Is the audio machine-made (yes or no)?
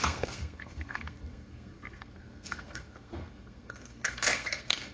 yes